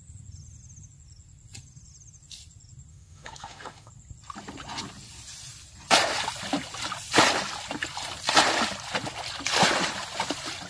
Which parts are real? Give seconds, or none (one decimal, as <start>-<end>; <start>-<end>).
0.0-2.9; 3.9-10.7